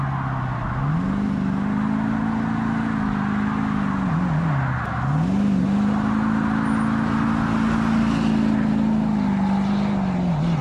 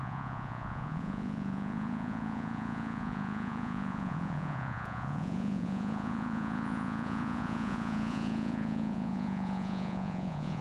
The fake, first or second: second